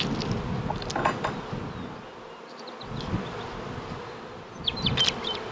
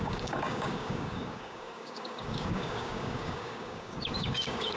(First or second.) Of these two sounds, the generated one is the second